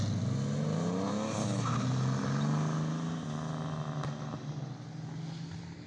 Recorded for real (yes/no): yes